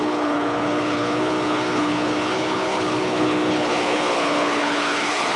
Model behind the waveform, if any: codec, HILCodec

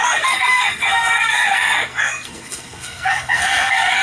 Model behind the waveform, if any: codec, SNAC